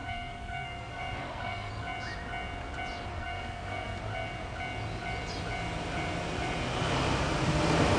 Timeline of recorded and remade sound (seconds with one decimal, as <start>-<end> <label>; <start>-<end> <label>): 0.0-1.7 remade; 1.7-3.1 recorded; 3.1-4.0 remade; 4.0-8.0 recorded

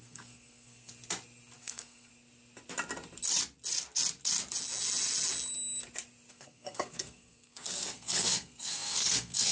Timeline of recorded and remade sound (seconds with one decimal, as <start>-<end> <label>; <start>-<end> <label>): 0.0-0.9 remade; 0.9-1.6 recorded; 1.6-2.1 remade; 2.1-6.3 recorded; 6.3-9.5 remade